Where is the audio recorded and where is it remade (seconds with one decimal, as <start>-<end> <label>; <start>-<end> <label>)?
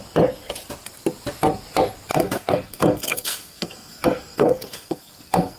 0.0-2.1 recorded; 2.1-5.6 remade